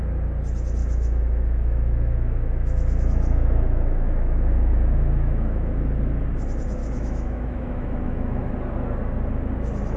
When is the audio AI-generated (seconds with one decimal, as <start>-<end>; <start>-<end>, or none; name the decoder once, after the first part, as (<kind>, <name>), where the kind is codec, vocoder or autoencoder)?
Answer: 0.8-5.8 (autoencoder, DAC-VAE); 6.8-8.5